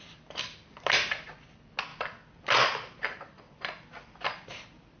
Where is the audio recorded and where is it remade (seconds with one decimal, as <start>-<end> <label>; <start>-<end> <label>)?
0.0-5.0 recorded